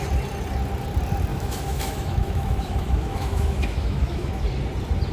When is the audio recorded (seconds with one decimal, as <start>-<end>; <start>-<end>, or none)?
0.0-1.3; 4.4-5.1